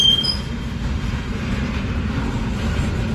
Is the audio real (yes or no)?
yes